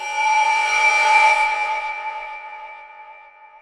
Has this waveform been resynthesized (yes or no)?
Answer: yes